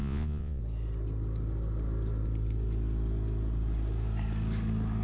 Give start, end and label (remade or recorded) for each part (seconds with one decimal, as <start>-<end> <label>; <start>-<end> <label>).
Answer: 0.0-0.6 remade; 0.6-5.0 recorded